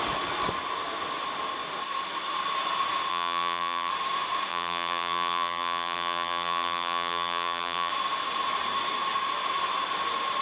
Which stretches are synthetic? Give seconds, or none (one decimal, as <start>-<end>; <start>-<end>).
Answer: 3.1-3.9; 4.5-7.9